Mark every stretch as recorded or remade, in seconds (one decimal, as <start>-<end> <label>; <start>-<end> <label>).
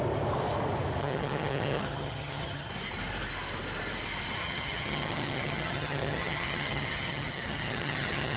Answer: 0.0-1.0 recorded; 1.0-2.7 remade; 2.7-4.4 recorded; 4.4-8.4 remade